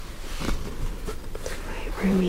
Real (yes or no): no